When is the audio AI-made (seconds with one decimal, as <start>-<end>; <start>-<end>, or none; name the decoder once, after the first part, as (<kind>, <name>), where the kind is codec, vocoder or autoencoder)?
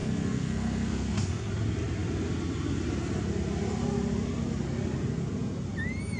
0.0-1.5 (codec, SNAC)